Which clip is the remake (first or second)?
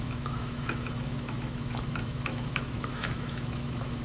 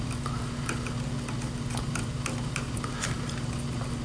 first